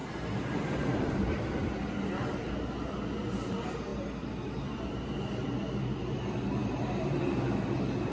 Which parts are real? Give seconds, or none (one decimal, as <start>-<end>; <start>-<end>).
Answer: 0.0-8.1